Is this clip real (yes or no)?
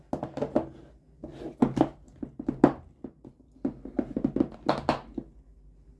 yes